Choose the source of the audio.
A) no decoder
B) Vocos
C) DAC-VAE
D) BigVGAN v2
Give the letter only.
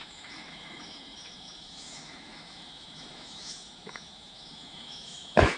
C